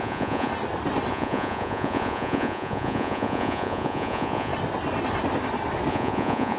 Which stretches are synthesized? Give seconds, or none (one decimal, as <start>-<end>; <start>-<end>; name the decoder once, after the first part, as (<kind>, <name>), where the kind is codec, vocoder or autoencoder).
0.0-0.5 (vocoder, Vocos); 1.1-4.5; 5.9-6.6